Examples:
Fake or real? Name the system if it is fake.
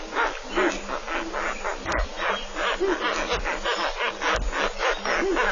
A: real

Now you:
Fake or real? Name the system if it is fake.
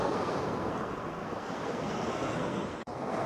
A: fake, codec, SNAC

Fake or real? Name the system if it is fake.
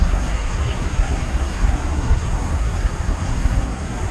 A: fake, codec, SNAC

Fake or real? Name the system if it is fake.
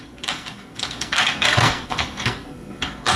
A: fake, codec, SNAC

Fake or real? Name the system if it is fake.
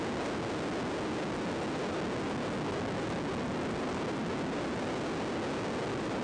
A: real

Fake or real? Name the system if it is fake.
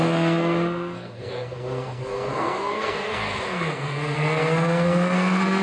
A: fake, codec, SNAC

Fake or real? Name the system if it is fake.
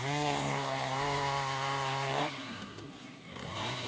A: fake, codec, SNAC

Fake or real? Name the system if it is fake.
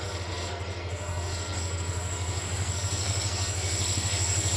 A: fake, codec, SNAC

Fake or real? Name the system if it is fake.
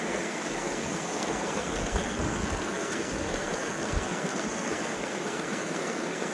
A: fake, codec, SNAC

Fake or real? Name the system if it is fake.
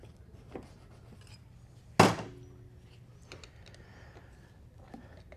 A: real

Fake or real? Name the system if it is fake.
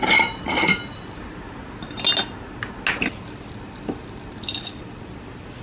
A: real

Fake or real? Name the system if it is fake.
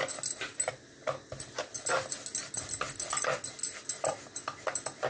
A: real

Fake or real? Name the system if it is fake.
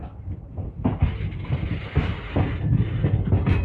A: real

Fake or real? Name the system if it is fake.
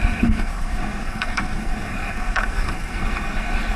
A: fake, codec, SNAC